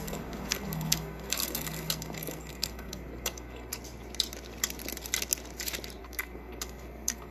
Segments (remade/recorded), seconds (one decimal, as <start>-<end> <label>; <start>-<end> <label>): 0.0-3.7 remade; 3.7-6.0 recorded; 6.0-7.3 remade